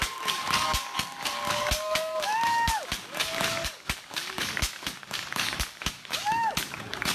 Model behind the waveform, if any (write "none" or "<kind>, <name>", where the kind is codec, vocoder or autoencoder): codec, DAC